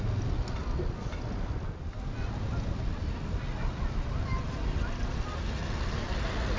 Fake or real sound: real